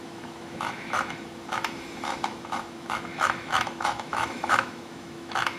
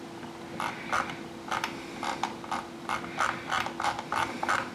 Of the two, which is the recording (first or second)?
second